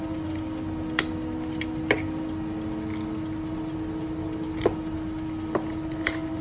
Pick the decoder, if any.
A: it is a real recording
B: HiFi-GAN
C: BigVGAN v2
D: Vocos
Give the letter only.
A